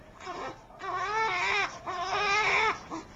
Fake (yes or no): no